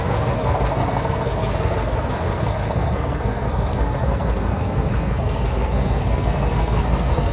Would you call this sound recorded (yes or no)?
no